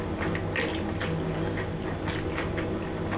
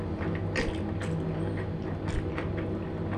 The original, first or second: first